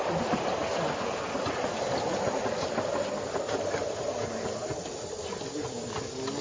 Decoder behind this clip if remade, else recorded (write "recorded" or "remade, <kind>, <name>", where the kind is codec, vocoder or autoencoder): recorded